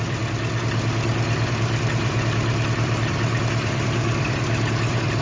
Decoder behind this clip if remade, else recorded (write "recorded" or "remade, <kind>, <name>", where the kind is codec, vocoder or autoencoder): remade, vocoder, BigVGAN v2